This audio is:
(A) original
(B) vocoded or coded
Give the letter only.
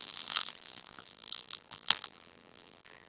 B